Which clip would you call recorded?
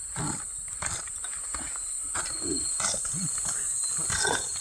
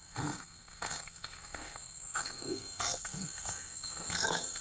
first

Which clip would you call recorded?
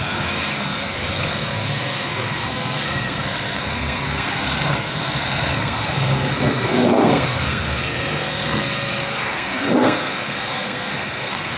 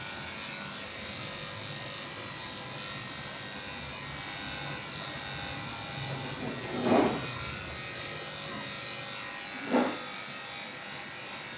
second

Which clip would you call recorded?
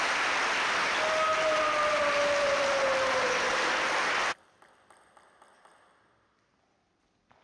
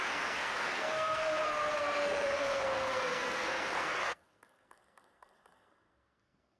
first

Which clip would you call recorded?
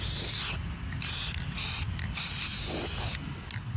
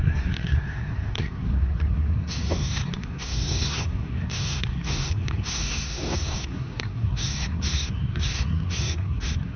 first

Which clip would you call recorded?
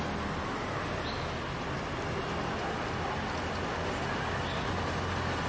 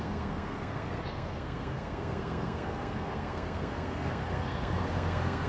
first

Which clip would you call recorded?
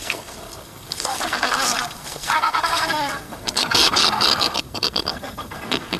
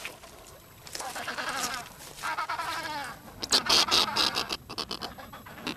second